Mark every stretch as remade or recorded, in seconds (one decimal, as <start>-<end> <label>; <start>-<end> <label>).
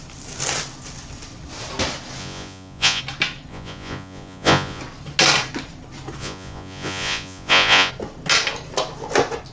0.0-2.2 recorded; 2.2-3.0 remade; 3.0-3.5 recorded; 3.5-4.8 remade; 4.8-6.2 recorded; 6.2-7.9 remade; 7.9-9.5 recorded